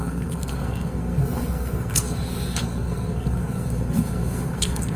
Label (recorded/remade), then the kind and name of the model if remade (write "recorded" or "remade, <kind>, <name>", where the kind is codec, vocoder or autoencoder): remade, codec, SNAC